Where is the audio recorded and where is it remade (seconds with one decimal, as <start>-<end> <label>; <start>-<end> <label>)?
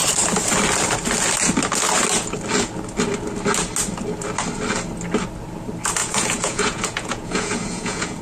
0.0-6.0 recorded; 6.0-8.2 remade